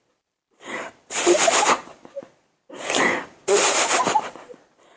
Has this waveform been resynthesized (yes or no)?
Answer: yes